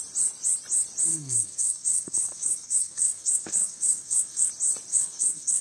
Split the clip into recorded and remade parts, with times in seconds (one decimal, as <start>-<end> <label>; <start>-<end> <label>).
0.0-1.1 recorded; 1.1-4.5 remade; 4.5-4.9 recorded; 4.9-5.6 remade